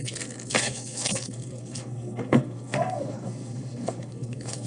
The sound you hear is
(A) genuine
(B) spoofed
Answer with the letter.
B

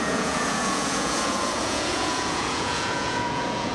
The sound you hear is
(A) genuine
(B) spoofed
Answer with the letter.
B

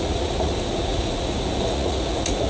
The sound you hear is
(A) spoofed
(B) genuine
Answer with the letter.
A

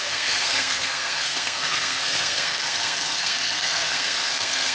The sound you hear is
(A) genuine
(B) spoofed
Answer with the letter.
B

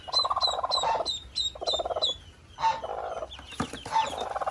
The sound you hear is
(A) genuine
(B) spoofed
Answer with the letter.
A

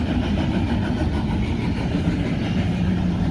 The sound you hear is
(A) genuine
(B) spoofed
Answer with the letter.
A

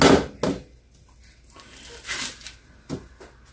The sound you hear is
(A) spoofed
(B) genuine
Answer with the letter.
B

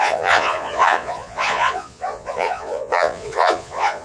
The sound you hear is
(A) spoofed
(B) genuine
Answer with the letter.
A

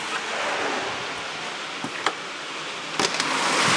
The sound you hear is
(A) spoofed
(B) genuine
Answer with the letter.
B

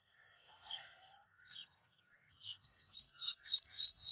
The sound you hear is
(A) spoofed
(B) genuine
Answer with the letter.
A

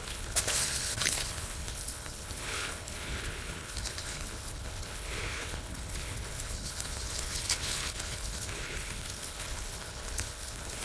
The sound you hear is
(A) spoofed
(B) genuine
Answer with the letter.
A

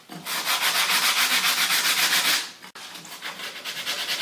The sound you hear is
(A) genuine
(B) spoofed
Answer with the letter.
A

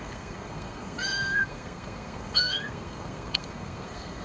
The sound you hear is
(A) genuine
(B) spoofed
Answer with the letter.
B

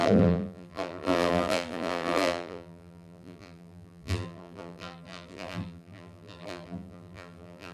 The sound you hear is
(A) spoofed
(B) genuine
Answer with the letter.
A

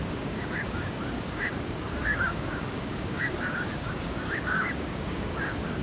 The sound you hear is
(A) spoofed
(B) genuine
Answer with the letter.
A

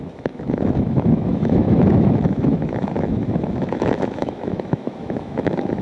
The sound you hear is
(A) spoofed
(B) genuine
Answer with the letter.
A